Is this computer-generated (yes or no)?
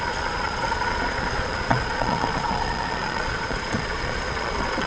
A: yes